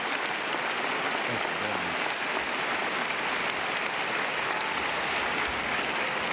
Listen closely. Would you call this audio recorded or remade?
recorded